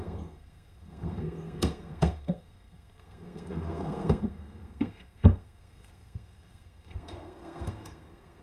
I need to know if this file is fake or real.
fake